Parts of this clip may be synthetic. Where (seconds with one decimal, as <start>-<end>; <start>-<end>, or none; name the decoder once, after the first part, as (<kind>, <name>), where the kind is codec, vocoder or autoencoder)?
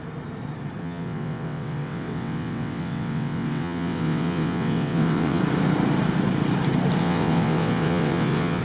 0.8-5.4 (vocoder, WaveNeXt); 7.0-8.6